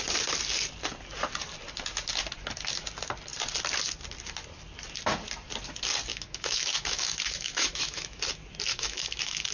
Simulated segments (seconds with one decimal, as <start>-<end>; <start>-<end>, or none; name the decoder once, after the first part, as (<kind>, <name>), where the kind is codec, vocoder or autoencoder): 6.1-8.2 (autoencoder, DAC-VAE); 8.7-9.5